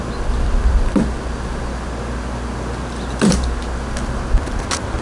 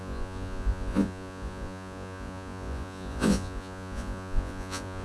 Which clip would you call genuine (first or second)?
first